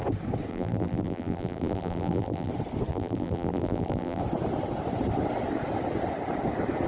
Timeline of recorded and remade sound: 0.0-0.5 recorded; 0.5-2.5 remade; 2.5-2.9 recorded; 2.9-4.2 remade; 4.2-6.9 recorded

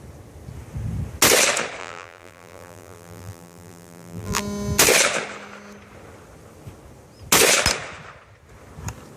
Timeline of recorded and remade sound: 0.0-1.8 recorded; 1.8-4.4 remade; 4.4-9.2 recorded

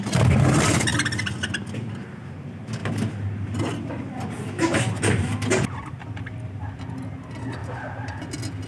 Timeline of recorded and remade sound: 0.0-2.8 recorded; 2.8-6.8 remade; 6.8-7.6 recorded; 7.6-8.2 remade; 8.2-8.7 recorded

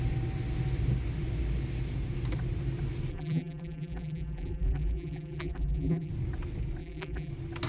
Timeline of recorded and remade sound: 0.0-3.1 recorded; 3.1-6.1 remade; 6.1-6.8 recorded; 6.8-7.3 remade; 7.3-7.7 recorded